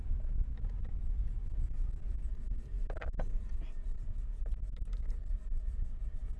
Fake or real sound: real